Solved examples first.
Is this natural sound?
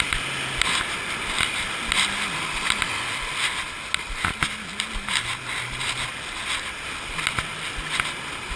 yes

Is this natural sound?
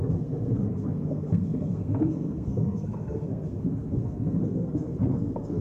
no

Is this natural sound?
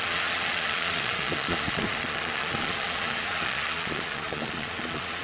no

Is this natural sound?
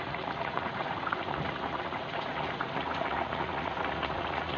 no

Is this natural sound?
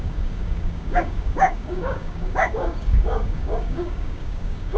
no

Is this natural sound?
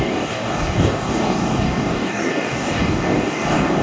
no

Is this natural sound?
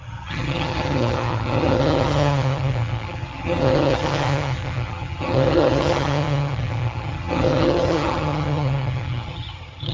no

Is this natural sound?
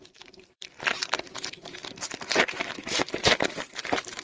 no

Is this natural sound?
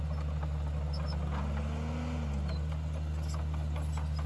yes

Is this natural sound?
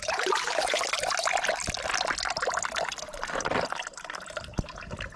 yes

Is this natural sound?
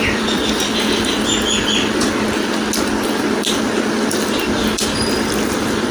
yes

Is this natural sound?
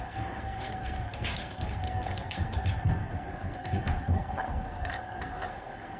no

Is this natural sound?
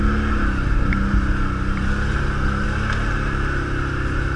yes